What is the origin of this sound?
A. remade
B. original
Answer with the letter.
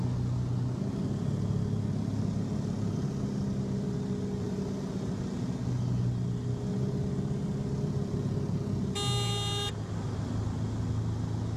B